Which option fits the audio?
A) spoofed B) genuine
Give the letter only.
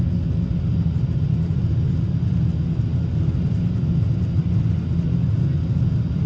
B